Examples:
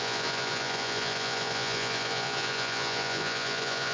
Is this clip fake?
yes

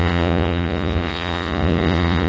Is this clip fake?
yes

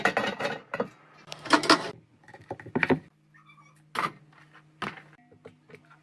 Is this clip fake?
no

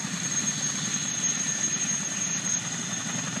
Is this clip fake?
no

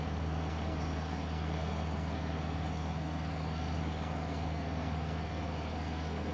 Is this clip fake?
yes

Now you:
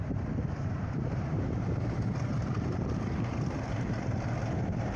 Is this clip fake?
yes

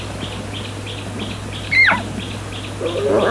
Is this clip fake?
no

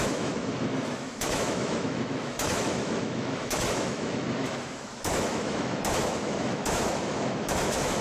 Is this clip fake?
yes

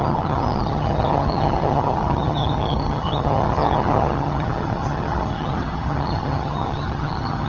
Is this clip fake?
yes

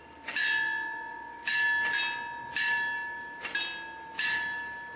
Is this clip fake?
no